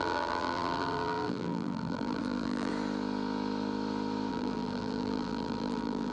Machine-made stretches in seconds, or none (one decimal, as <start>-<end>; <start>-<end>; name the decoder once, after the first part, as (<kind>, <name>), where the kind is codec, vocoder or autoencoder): 0.0-2.7 (vocoder, BigVGAN v2); 4.3-6.1